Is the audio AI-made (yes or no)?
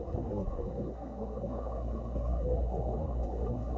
yes